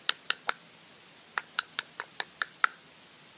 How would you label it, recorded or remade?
recorded